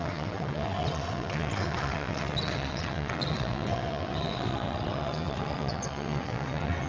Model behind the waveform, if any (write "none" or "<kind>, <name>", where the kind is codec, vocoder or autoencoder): vocoder, WaveNeXt